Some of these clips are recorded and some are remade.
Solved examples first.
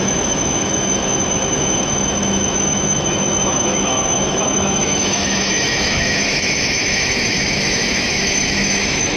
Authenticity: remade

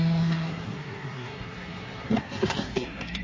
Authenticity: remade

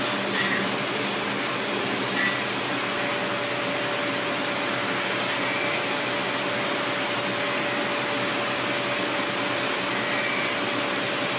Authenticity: recorded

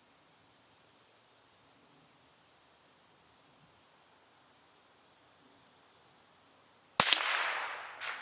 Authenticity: recorded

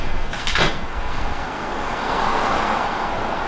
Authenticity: remade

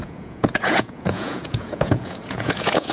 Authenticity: remade